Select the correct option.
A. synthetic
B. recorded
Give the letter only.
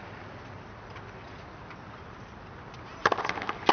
B